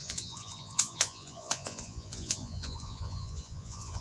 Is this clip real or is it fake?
fake